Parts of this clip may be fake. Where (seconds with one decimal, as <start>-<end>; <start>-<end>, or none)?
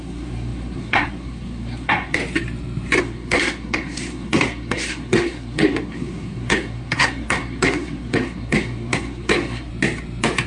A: 0.0-2.2; 3.0-9.7